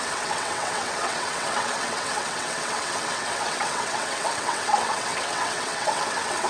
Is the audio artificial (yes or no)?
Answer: yes